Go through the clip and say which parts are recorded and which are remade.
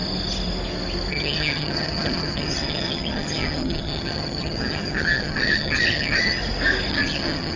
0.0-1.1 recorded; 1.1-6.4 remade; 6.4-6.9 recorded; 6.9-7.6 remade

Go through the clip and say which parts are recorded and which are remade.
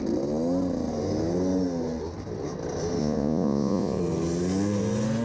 0.0-3.0 recorded; 3.0-4.0 remade; 4.0-5.2 recorded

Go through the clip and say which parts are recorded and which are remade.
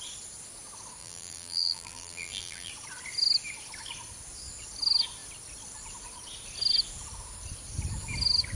0.0-1.0 recorded; 1.0-2.7 remade; 2.7-8.6 recorded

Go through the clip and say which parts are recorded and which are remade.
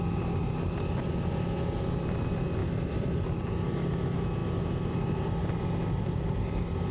0.0-2.6 recorded; 2.6-3.5 remade; 3.5-6.9 recorded